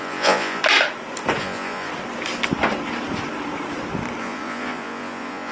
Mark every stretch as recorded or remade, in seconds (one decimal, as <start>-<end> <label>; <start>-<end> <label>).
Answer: 0.0-0.6 remade; 0.6-1.4 recorded; 1.4-1.9 remade; 1.9-4.2 recorded; 4.2-5.5 remade